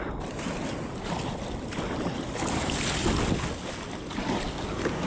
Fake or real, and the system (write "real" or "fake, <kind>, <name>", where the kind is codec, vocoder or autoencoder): real